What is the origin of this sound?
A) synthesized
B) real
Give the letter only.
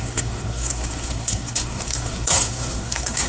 A